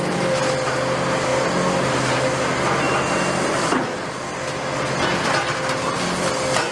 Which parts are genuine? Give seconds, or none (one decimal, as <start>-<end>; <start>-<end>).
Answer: 0.0-6.7